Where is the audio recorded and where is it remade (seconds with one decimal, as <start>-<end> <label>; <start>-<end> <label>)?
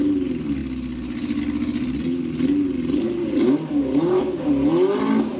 0.0-3.2 recorded; 3.2-4.5 remade; 4.5-5.4 recorded